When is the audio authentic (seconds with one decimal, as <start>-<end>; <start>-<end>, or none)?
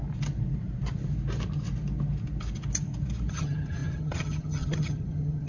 0.0-3.3